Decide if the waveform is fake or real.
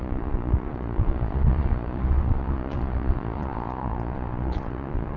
fake